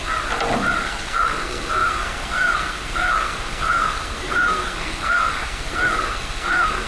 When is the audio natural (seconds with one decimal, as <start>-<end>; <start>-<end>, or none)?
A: 0.0-0.8